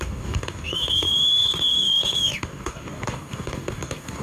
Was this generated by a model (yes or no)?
yes